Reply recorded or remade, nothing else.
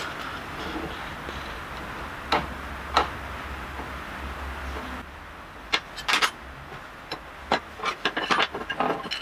recorded